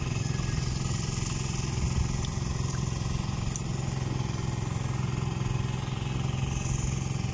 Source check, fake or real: real